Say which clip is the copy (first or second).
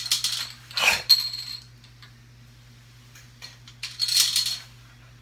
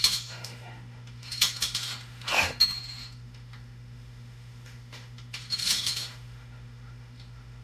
second